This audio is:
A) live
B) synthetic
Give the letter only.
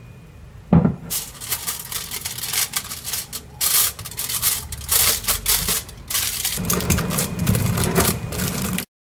A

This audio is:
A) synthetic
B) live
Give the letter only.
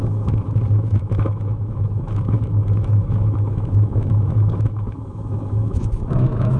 A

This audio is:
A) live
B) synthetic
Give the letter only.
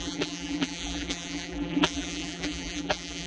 B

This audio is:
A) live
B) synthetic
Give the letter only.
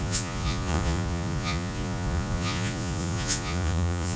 B